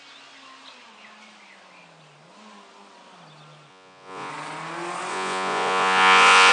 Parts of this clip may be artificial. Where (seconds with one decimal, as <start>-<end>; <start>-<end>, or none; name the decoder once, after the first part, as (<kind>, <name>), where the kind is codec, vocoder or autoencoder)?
3.7-4.3 (vocoder, Vocos); 5.1-6.5